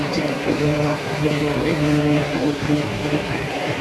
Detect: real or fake fake